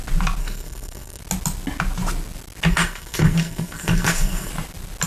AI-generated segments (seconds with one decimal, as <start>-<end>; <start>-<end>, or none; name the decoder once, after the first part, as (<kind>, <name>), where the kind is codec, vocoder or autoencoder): 0.4-1.2 (codec, SNAC); 2.7-4.5

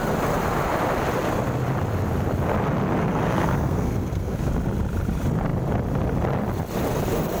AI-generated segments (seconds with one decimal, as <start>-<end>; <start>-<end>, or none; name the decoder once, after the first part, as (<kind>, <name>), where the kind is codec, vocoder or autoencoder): 3.0-4.5 (codec, SNAC)

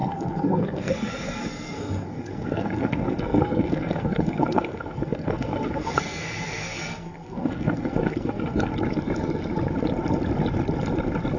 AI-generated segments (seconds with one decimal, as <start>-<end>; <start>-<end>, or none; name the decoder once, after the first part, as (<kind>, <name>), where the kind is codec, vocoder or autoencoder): 0.0-8.7 (codec, SNAC)

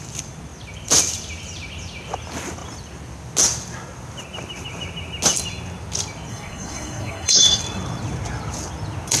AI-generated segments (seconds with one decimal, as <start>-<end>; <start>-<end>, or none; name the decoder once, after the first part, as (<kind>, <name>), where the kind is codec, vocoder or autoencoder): 6.3-7.6 (codec, SNAC)

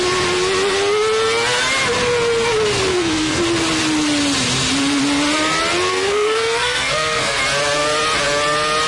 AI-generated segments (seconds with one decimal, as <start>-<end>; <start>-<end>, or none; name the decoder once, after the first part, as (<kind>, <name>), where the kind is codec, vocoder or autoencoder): 2.9-3.4 (codec, SNAC); 5.9-7.4

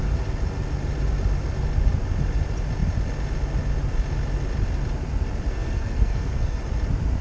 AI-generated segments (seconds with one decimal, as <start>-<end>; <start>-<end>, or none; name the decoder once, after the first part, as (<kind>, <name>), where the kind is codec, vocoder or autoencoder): 5.5-6.6 (codec, SNAC)

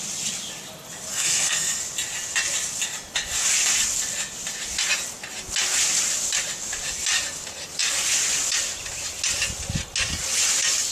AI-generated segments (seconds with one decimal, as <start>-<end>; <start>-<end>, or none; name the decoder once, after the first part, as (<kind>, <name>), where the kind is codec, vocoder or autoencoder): 1.1-1.8 (codec, SNAC)